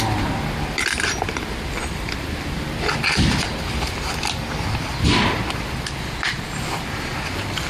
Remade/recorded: remade